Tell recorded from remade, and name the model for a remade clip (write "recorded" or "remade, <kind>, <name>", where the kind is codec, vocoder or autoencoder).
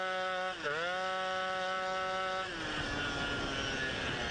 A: recorded